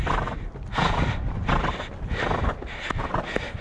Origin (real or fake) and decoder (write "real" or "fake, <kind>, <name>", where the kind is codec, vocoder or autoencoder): real